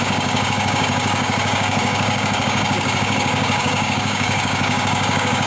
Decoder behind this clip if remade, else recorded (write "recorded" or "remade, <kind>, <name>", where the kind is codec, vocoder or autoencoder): remade, codec, DAC